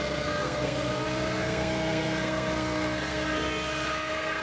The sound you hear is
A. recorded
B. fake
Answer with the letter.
B